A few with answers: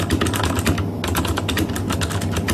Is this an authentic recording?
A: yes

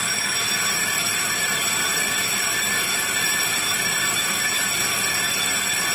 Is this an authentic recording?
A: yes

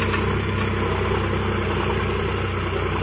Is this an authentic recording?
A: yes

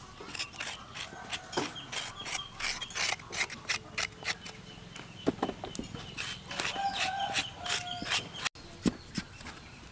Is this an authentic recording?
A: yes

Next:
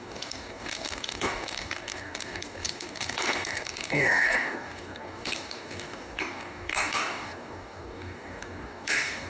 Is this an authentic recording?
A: no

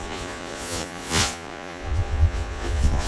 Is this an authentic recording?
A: no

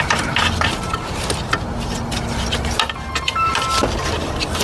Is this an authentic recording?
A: yes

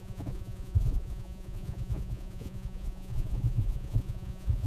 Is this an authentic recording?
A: no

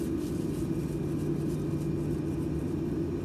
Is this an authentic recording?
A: yes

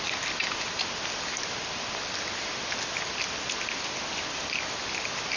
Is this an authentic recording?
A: yes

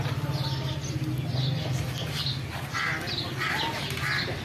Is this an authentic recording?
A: yes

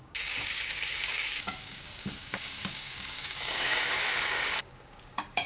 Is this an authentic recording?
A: no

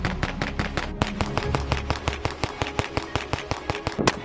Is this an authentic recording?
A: yes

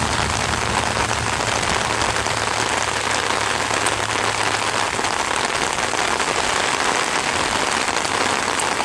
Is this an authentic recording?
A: yes